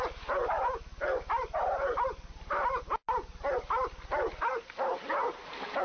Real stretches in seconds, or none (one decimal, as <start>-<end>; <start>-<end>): 0.0-5.8